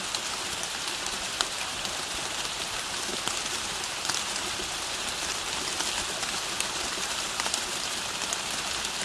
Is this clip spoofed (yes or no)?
no